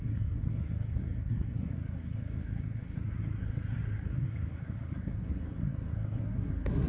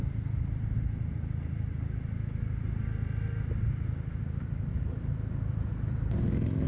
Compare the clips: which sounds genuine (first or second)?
second